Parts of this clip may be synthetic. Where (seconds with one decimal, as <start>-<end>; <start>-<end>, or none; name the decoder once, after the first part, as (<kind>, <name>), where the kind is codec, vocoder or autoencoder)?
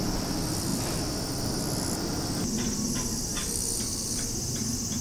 none